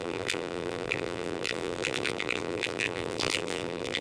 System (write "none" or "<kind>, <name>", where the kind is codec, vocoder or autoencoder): vocoder, BigVGAN v2